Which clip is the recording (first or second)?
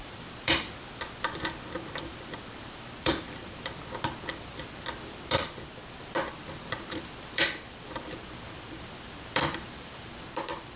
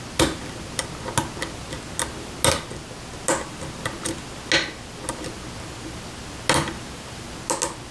second